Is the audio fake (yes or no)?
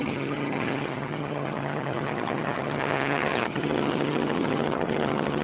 yes